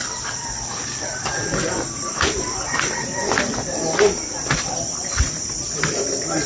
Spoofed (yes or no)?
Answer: yes